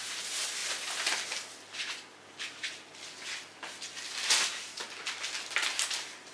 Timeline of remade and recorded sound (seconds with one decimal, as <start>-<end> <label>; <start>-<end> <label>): 0.0-6.3 recorded